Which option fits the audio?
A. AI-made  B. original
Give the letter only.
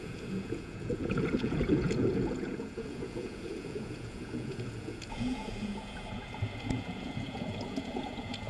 A